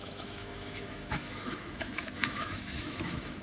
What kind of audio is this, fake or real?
fake